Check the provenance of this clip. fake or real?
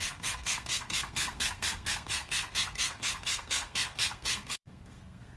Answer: fake